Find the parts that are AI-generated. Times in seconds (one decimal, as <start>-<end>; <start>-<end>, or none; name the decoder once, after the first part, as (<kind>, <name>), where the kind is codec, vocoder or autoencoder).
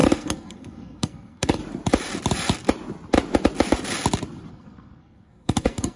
0.0-1.6 (codec, SNAC); 4.5-6.0